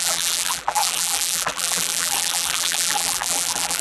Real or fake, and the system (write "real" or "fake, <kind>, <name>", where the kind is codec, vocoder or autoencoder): fake, vocoder, BigVGAN v2